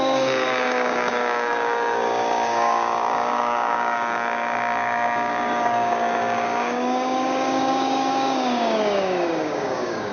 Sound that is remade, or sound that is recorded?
remade